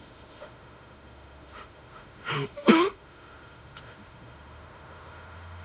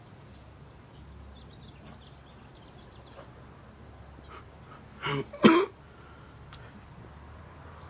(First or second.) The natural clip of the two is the second